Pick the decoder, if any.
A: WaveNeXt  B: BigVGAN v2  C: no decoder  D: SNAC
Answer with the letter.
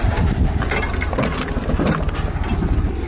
C